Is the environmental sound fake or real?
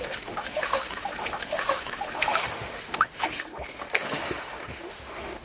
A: fake